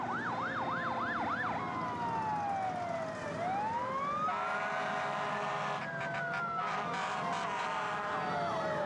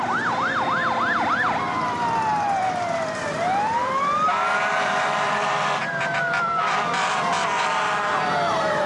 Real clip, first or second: first